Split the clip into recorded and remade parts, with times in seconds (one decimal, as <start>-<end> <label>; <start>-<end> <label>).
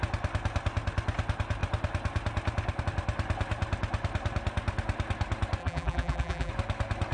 0.0-5.6 recorded; 5.6-6.5 remade; 6.5-7.1 recorded